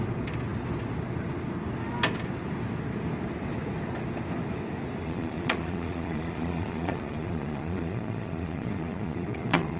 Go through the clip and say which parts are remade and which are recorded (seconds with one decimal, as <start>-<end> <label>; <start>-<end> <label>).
0.0-5.0 recorded; 5.0-9.8 remade